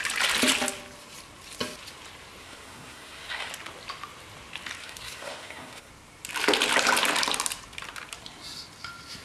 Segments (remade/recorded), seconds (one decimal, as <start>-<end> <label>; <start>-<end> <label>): 0.0-2.4 recorded; 2.4-3.5 remade; 3.5-4.8 recorded; 4.8-5.9 remade; 5.9-9.2 recorded